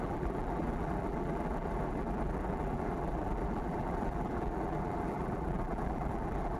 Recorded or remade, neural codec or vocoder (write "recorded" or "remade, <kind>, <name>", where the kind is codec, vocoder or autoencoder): remade, vocoder, BigVGAN v2